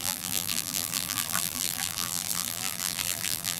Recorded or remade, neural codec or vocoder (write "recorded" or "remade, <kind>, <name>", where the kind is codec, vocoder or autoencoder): remade, vocoder, BigVGAN v2